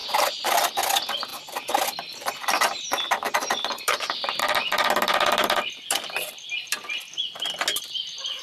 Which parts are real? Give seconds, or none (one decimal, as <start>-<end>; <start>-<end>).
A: 0.7-1.3; 4.4-5.4; 7.1-8.4